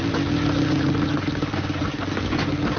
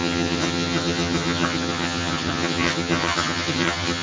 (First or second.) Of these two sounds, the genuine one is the first